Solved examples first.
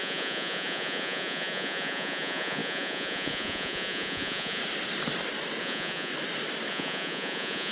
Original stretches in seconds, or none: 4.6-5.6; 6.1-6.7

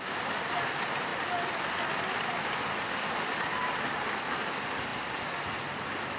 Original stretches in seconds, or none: 0.0-6.2

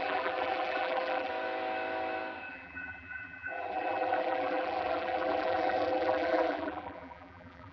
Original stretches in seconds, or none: 1.3-2.5

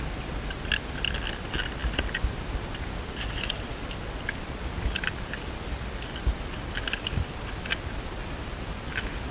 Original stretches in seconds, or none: 0.0-9.3

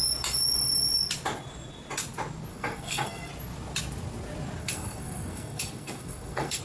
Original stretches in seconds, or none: 0.0-2.5; 3.3-4.6

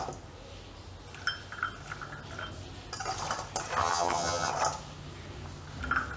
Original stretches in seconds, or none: 0.0-3.8; 4.5-6.2

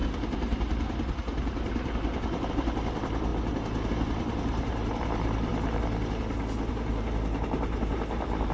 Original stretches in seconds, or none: 3.3-3.9; 5.5-6.7